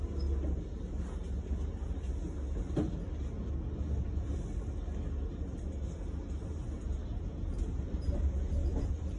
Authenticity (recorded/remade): recorded